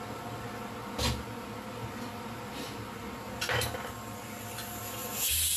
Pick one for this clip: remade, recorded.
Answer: recorded